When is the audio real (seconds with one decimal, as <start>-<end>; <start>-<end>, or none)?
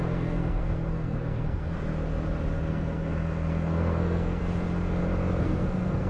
1.9-2.7; 4.4-5.4